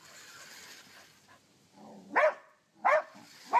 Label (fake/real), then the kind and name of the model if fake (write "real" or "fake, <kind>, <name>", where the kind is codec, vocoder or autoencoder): real